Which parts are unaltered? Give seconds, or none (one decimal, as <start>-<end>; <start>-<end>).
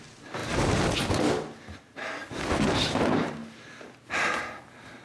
0.0-5.0